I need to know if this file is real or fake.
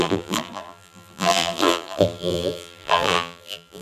fake